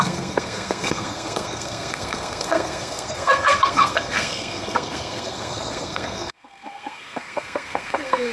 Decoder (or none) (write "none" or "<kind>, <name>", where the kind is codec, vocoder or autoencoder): codec, SNAC